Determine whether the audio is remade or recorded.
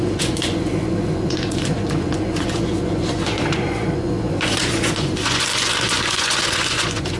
remade